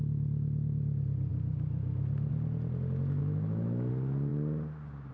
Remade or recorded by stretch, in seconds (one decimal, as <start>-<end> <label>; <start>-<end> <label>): 0.0-3.2 recorded; 3.2-3.9 remade; 3.9-5.1 recorded